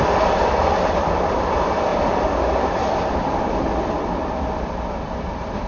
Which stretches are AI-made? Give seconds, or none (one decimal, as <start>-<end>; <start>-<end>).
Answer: 0.0-1.9; 2.4-5.7